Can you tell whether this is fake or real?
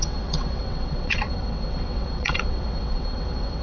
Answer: fake